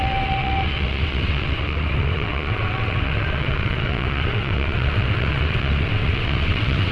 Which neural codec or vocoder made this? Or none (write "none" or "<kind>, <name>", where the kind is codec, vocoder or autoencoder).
vocoder, WaveNeXt